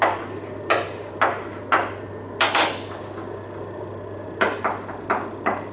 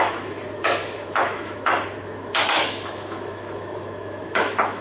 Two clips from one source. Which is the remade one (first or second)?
second